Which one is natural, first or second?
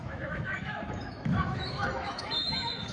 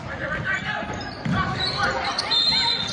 second